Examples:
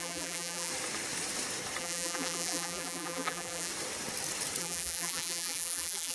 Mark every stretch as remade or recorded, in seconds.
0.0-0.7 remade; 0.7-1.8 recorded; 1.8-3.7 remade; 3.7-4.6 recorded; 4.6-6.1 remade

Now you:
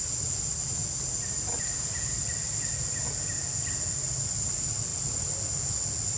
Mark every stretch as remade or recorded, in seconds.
0.0-6.2 recorded

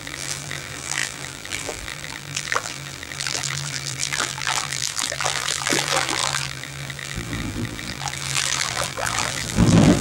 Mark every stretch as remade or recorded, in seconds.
0.0-10.0 remade